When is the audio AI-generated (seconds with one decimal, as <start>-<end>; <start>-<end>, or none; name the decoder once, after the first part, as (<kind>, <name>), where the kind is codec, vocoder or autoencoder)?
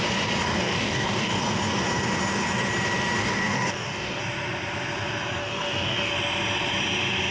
0.4-1.4 (codec, DAC); 3.2-4.2; 5.4-6.1